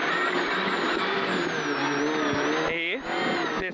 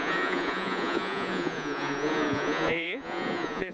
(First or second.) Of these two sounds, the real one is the first